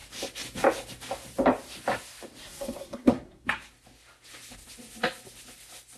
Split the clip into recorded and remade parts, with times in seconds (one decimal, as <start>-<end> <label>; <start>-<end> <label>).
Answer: 0.0-2.4 recorded; 2.4-3.7 remade; 3.7-6.0 recorded